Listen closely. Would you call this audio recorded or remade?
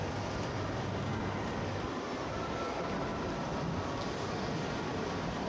recorded